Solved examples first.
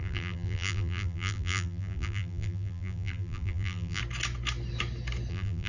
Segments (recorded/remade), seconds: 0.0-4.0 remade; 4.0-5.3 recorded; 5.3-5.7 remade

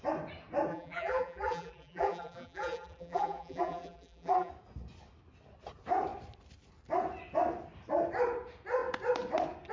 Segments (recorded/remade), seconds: 0.0-0.7 recorded; 0.7-4.5 remade; 4.5-9.7 recorded

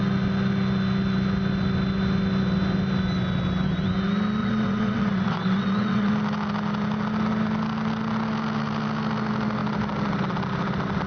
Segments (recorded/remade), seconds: 0.0-4.4 recorded; 4.4-6.1 remade; 6.1-11.1 recorded

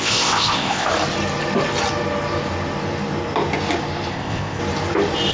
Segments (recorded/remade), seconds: 0.0-0.9 remade; 0.9-4.1 recorded; 4.1-4.6 remade; 4.6-5.3 recorded

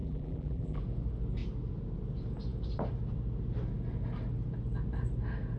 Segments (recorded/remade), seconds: 0.0-0.8 remade; 0.8-5.6 recorded

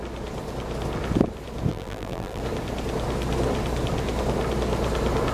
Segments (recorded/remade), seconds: 0.0-1.7 recorded; 1.7-2.4 remade; 2.4-5.3 recorded

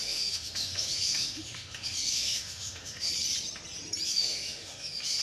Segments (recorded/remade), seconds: 0.0-3.1 remade; 3.1-4.1 recorded; 4.1-5.2 remade

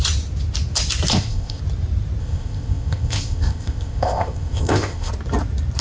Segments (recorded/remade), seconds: 0.0-1.1 recorded; 1.1-1.6 remade; 1.6-2.2 recorded; 2.2-5.1 remade; 5.1-5.8 recorded